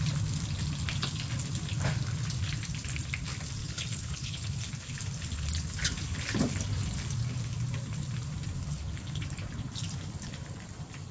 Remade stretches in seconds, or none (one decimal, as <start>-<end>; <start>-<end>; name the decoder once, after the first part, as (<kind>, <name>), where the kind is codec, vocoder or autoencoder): 3.6-4.7 (codec, HILCodec); 8.6-9.2